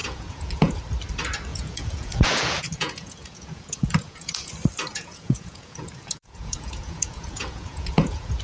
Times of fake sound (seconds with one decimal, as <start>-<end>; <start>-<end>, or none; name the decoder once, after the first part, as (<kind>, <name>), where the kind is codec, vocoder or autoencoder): 0.0-0.8 (vocoder, Vocos); 1.5-4.5; 4.9-8.4